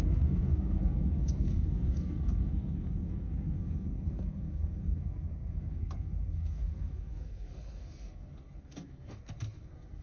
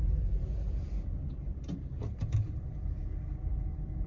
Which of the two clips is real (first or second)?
second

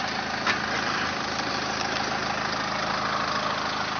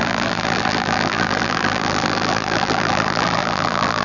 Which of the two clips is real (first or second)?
first